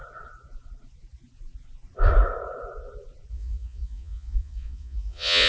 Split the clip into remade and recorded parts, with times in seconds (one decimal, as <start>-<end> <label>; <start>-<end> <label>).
0.0-3.3 recorded; 3.3-5.5 remade